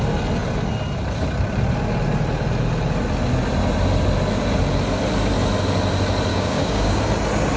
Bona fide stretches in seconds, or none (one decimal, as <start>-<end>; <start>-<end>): 0.0-6.3; 7.0-7.6